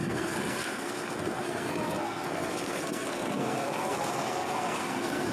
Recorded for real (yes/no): no